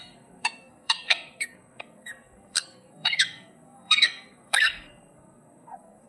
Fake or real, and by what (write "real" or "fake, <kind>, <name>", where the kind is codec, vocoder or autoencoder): fake, codec, SNAC